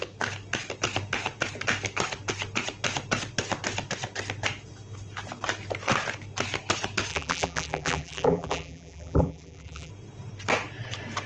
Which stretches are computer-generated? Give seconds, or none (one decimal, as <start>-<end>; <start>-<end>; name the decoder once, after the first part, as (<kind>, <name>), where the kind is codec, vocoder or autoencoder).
7.1-9.9 (vocoder, BigVGAN v2)

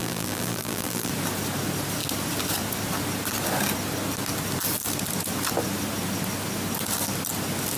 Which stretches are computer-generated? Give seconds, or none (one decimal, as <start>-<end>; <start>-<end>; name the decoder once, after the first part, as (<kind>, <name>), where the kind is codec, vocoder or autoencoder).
0.0-1.1 (vocoder, BigVGAN v2)

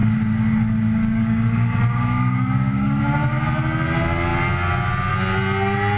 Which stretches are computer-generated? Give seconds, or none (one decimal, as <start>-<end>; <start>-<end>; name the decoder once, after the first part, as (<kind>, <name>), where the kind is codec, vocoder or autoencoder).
0.0-3.0 (codec, DAC)